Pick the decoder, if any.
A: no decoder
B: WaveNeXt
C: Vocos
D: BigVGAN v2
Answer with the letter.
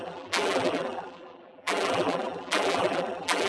D